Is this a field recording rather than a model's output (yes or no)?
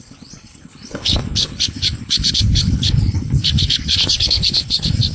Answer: no